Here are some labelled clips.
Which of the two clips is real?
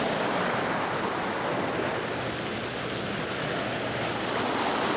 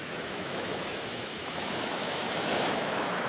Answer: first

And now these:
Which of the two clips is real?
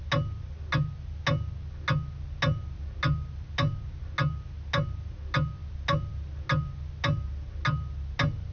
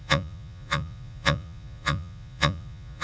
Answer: first